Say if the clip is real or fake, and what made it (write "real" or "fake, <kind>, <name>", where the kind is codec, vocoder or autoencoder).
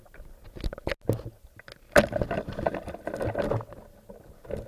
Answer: real